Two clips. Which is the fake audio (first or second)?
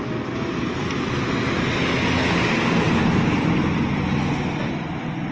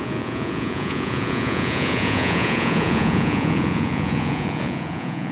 second